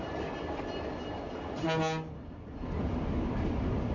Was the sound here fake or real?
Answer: real